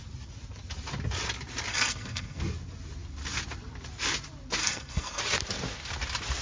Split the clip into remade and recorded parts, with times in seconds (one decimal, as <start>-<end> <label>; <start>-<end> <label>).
0.0-1.7 recorded; 1.7-2.4 remade; 2.4-4.6 recorded; 4.6-5.2 remade; 5.2-6.4 recorded

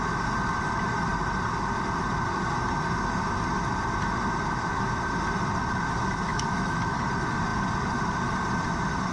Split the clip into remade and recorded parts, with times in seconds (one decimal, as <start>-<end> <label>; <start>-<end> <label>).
0.0-6.3 recorded; 6.3-7.1 remade; 7.1-9.1 recorded